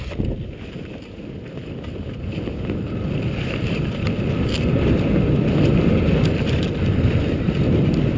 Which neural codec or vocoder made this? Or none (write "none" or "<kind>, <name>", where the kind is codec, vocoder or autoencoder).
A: none